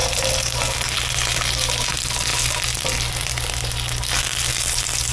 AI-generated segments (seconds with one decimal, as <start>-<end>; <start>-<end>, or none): 0.0-1.1; 2.3-3.5